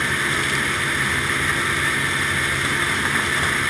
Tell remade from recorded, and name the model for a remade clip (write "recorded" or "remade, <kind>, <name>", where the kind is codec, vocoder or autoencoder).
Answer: recorded